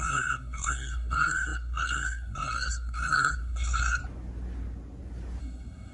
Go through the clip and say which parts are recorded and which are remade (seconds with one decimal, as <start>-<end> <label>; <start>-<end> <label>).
0.0-4.0 remade; 4.0-5.4 recorded; 5.4-5.9 remade